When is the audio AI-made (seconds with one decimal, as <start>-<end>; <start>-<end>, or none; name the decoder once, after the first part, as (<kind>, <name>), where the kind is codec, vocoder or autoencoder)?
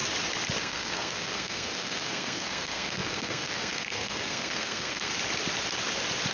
0.6-5.1 (codec, SNAC)